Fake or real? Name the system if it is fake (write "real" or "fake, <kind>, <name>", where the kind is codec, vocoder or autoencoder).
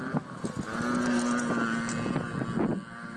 real